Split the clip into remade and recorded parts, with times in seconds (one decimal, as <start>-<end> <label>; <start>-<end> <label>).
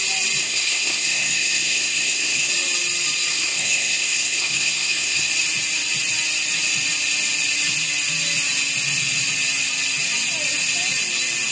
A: 0.0-0.4 recorded; 0.4-2.5 remade; 2.5-3.3 recorded; 3.3-5.3 remade; 5.3-11.5 recorded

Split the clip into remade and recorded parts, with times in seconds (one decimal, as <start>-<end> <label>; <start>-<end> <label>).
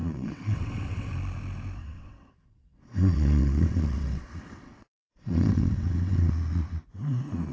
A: 0.0-1.1 remade; 1.1-1.8 recorded; 1.8-6.3 remade; 6.3-7.5 recorded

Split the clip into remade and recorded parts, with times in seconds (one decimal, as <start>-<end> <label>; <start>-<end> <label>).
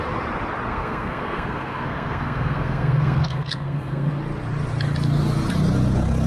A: 0.0-0.7 recorded; 0.7-4.1 remade; 4.1-6.3 recorded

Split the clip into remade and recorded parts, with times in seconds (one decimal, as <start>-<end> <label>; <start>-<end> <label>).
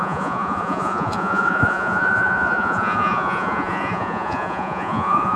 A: 0.0-5.4 remade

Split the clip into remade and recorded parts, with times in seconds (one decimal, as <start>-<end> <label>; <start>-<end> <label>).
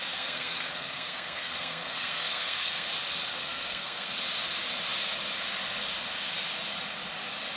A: 0.0-2.9 remade; 2.9-3.3 recorded; 3.3-4.1 remade; 4.1-7.6 recorded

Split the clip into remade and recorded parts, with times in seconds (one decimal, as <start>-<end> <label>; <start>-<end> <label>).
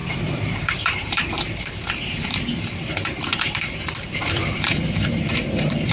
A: 0.0-5.9 remade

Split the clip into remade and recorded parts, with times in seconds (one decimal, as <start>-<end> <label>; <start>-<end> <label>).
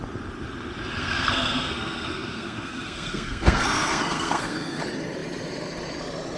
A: 0.0-1.0 recorded; 1.0-4.8 remade; 4.8-6.4 recorded